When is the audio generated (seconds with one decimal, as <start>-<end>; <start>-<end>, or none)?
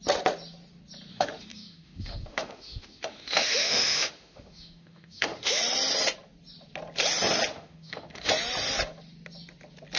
1.1-5.6; 7.5-8.3